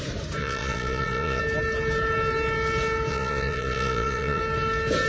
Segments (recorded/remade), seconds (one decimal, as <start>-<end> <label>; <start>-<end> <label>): 0.0-0.4 recorded; 0.4-1.4 remade; 1.4-3.1 recorded; 3.1-4.4 remade; 4.4-5.1 recorded